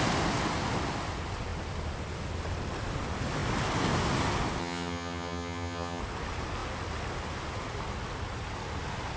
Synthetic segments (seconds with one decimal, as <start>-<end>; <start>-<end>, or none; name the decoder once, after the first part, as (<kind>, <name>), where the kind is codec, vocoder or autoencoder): 4.6-6.0 (vocoder, HiFi-GAN)